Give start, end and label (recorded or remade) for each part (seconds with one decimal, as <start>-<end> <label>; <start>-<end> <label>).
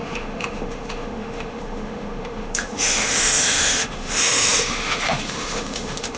0.0-6.2 remade